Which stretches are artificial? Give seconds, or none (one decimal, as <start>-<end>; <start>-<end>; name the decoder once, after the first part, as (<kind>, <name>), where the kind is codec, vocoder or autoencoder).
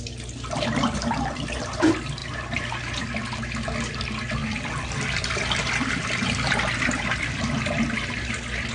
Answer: 4.4-7.7 (vocoder, BigVGAN v2)